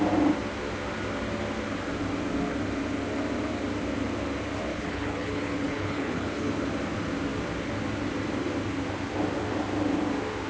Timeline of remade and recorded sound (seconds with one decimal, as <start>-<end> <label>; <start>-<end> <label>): 0.0-4.7 recorded; 4.7-6.5 remade; 6.5-10.5 recorded